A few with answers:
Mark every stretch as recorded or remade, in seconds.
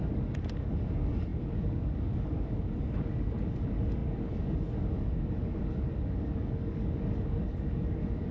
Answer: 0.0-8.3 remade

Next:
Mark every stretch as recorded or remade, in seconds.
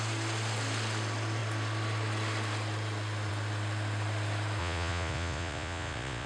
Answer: 0.0-4.6 recorded; 4.6-6.3 remade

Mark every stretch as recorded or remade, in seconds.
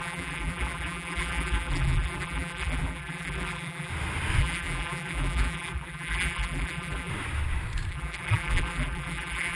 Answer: 0.0-3.9 remade; 3.9-4.4 recorded; 4.4-7.1 remade; 7.1-7.9 recorded; 7.9-9.5 remade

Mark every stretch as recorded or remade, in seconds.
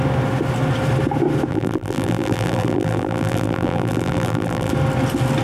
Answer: 0.0-1.5 recorded; 1.5-4.7 remade; 4.7-5.4 recorded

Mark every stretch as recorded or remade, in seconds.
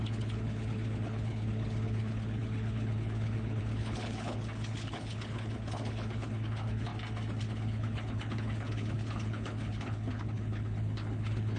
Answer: 0.0-6.9 remade; 6.9-7.4 recorded; 7.4-11.6 remade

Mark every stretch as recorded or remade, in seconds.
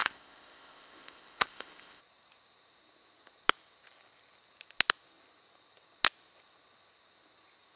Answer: 0.0-2.0 remade; 2.0-7.8 recorded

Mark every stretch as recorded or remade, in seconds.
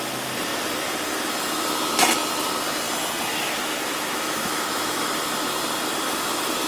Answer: 0.0-3.3 recorded; 3.3-5.2 remade; 5.2-6.7 recorded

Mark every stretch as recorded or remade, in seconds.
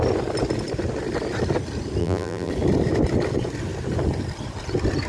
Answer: 0.0-2.0 recorded; 2.0-2.5 remade; 2.5-5.1 recorded